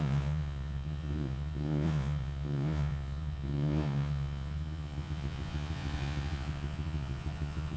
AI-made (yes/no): yes